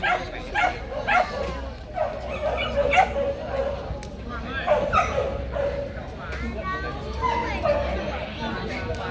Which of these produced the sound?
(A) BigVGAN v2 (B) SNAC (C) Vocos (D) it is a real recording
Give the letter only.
D